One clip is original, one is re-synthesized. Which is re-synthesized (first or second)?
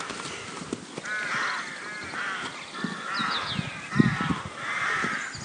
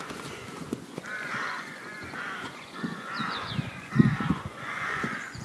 second